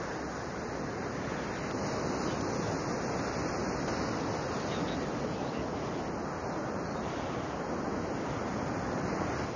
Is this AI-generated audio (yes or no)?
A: no